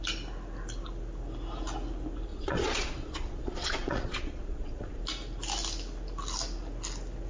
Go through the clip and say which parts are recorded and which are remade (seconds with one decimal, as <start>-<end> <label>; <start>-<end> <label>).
0.0-2.3 recorded; 2.3-5.0 remade; 5.0-7.3 recorded